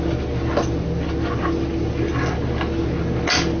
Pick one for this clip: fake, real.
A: real